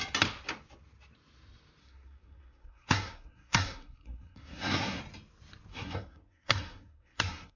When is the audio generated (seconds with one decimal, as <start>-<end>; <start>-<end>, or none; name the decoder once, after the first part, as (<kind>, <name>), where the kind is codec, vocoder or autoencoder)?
1.8-5.0 (codec, SNAC); 5.7-7.6